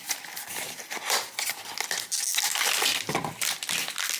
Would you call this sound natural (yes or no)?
yes